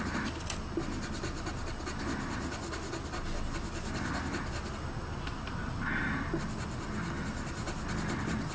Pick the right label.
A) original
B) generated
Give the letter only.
A